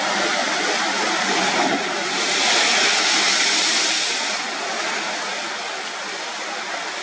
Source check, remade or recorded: recorded